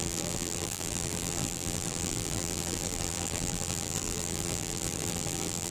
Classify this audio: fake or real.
fake